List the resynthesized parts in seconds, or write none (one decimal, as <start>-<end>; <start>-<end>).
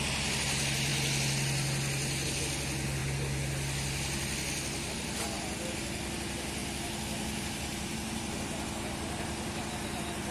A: none